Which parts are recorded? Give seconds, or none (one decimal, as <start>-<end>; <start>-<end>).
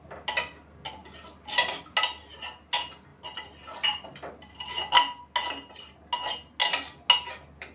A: 0.0-1.0; 1.8-3.1; 4.3-7.7